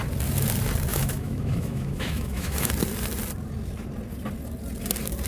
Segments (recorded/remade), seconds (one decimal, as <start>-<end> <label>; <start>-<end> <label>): 0.0-0.9 recorded; 0.9-2.7 remade; 2.7-5.3 recorded